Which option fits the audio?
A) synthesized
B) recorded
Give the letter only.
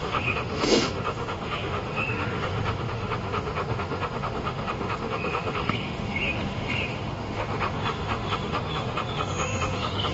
A